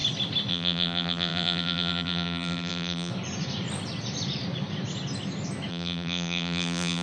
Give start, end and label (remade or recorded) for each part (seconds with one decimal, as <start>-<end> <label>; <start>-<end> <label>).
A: 0.0-0.5 recorded; 0.5-3.1 remade; 3.1-5.7 recorded; 5.7-7.0 remade

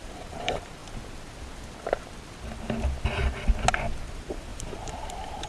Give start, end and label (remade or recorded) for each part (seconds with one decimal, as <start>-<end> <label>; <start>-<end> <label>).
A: 0.0-0.8 remade; 0.8-4.1 recorded; 4.1-5.5 remade

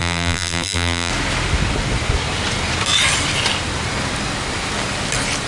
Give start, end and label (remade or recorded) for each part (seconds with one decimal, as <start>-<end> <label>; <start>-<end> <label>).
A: 0.0-1.1 remade; 1.1-5.5 recorded

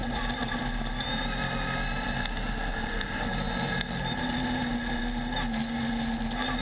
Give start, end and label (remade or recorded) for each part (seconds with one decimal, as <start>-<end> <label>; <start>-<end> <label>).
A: 0.0-0.6 remade; 0.6-2.7 recorded; 2.7-5.0 remade; 5.0-6.6 recorded

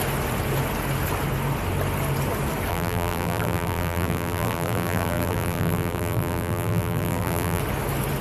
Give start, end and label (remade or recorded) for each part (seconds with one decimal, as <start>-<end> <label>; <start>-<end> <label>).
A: 0.0-2.7 recorded; 2.7-7.6 remade; 7.6-8.2 recorded

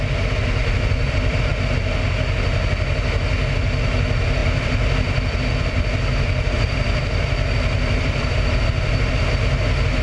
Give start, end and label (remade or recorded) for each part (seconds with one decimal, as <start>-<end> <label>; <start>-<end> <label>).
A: 0.0-0.6 recorded; 0.6-1.5 remade; 1.5-4.4 recorded; 4.4-9.1 remade; 9.1-10.0 recorded

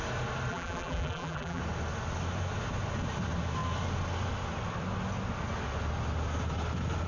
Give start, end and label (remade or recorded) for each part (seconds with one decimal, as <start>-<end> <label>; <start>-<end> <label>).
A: 0.0-0.5 recorded; 0.5-1.6 remade; 1.6-7.1 recorded

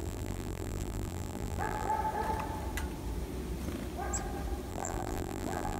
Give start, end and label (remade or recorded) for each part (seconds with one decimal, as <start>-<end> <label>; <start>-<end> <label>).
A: 0.0-1.9 remade; 1.9-4.7 recorded; 4.7-5.8 remade